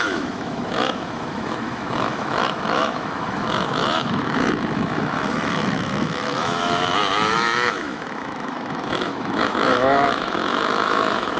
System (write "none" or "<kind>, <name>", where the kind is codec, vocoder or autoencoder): autoencoder, DAC-VAE